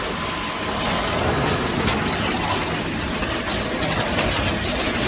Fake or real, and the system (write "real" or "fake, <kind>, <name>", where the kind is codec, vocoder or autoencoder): real